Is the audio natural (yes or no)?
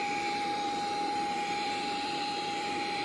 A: no